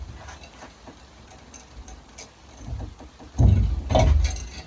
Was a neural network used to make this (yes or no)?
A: no